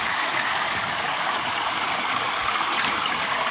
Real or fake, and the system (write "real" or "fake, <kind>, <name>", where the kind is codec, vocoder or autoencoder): fake, codec, DAC